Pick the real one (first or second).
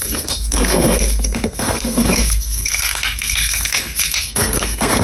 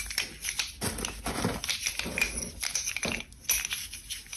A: second